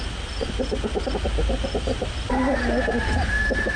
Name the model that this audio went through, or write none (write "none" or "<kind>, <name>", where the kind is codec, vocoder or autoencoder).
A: none